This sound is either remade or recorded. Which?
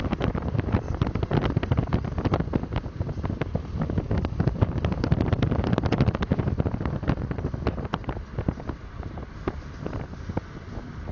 remade